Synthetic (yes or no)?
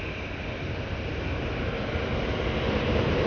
no